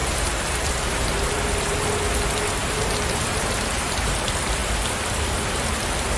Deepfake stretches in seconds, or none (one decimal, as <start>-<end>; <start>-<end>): 0.0-1.1; 2.6-4.1